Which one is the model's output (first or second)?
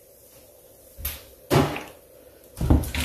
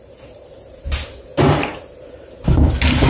second